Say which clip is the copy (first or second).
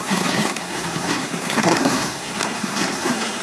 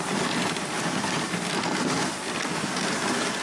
first